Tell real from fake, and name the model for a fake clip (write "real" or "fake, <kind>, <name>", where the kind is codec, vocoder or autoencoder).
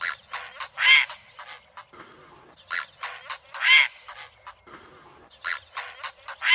real